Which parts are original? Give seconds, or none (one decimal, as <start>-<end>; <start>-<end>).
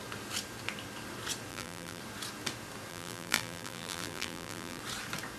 0.0-1.5; 2.0-2.9; 4.8-5.4